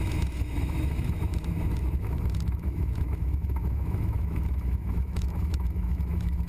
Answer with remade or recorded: remade